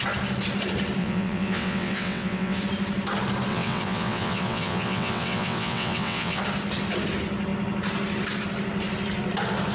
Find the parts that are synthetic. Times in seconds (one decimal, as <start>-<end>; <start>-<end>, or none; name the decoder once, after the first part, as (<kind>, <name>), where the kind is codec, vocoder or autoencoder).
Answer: 1.0-2.6 (vocoder, WaveNeXt); 3.5-6.4